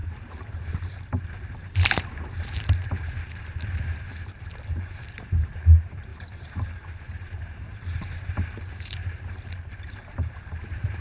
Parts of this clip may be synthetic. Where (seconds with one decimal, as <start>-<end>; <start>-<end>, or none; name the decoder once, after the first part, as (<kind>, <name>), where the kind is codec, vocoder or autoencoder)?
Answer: 0.0-11.0 (vocoder, BigVGAN v2)